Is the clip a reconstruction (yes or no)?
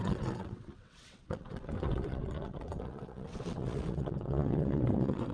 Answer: yes